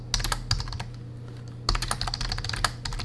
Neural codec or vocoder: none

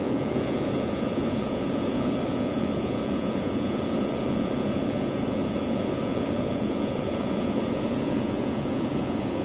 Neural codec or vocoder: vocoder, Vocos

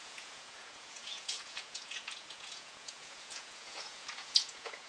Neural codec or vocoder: vocoder, Vocos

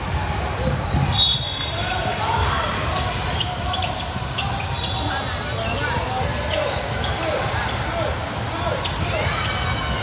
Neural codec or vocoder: none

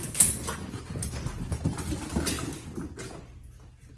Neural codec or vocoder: none